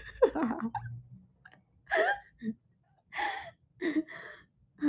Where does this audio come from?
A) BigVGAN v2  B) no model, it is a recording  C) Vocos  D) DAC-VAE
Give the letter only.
B